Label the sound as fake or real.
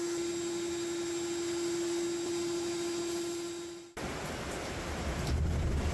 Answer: real